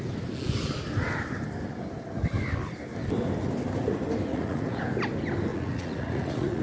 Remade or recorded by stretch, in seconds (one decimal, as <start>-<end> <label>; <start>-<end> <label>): 0.0-4.3 recorded; 4.3-4.8 remade; 4.8-5.5 recorded; 5.5-6.6 remade